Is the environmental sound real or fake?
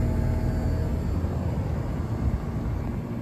real